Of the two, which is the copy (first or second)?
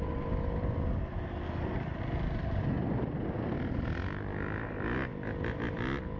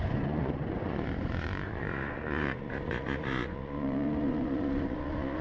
second